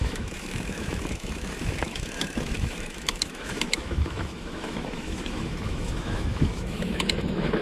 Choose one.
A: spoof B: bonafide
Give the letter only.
A